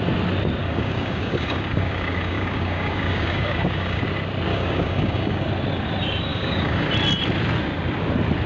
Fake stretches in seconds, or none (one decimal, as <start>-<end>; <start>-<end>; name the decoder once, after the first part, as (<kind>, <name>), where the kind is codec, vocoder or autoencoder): 0.6-4.0 (codec, DAC); 4.5-5.5; 6.3-6.9